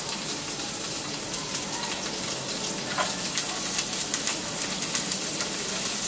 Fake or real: real